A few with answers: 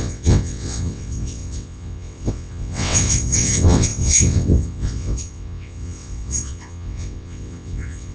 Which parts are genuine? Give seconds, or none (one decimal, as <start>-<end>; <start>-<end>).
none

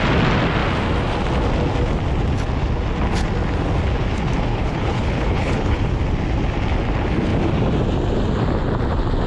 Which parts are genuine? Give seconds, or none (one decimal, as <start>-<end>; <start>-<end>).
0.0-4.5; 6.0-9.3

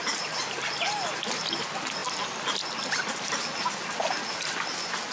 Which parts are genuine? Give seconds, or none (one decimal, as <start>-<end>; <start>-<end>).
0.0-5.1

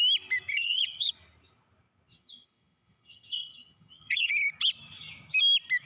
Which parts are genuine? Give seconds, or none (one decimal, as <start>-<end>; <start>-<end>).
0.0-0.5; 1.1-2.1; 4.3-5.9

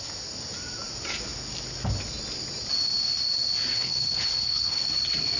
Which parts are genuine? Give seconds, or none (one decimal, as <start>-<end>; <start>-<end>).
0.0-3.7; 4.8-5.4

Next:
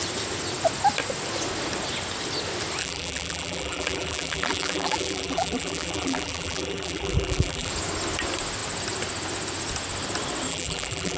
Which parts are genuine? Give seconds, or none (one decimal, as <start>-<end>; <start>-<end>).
0.0-2.8; 7.7-10.5

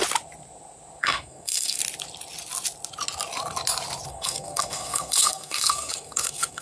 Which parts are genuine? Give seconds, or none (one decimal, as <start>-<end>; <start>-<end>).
0.0-1.0; 1.8-4.1